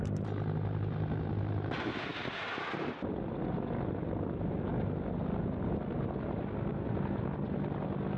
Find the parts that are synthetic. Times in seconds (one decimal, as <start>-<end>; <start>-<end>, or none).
none